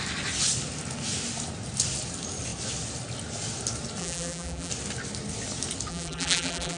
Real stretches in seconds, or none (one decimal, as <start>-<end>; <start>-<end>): 0.0-4.0; 4.7-5.9